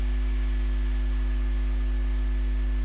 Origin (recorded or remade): recorded